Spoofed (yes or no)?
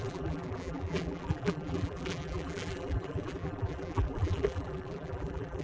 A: yes